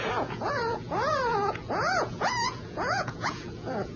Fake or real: fake